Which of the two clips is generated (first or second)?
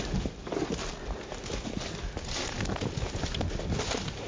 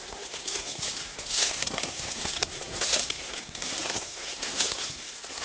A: second